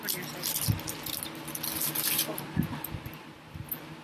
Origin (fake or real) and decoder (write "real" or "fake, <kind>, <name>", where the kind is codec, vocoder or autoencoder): real